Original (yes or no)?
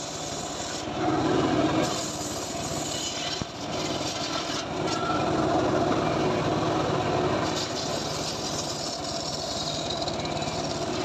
yes